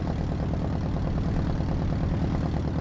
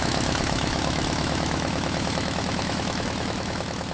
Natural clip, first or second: first